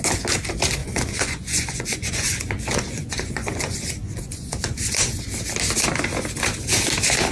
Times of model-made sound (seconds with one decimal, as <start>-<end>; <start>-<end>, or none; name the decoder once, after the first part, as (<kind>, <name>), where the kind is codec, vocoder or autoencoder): 0.8-5.2 (vocoder, Vocos)